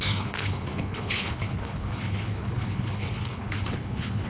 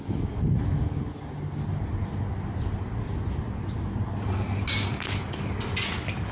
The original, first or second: second